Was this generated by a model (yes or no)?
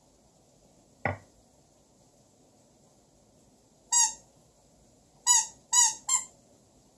no